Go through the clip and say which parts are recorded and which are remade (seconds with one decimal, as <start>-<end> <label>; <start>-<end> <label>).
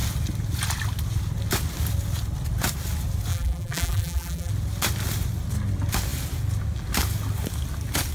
0.0-3.3 recorded; 3.3-4.5 remade; 4.5-8.1 recorded